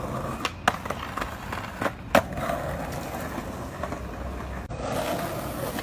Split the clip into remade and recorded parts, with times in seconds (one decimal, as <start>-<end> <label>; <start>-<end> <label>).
0.0-5.8 recorded